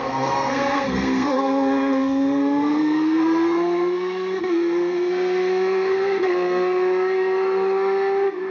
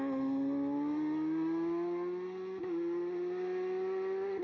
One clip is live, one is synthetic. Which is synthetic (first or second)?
first